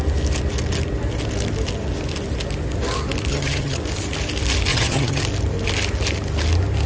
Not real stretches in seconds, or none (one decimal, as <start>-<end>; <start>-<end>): 3.3-3.8; 4.7-5.2